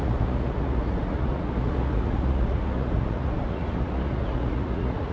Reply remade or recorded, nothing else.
remade